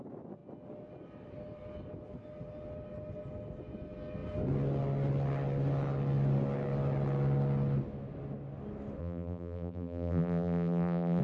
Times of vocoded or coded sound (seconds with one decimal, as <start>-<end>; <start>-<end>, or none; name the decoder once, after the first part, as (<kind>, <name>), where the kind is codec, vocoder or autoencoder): 9.0-11.2 (vocoder, BigVGAN v2)